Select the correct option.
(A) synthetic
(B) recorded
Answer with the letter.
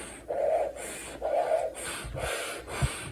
B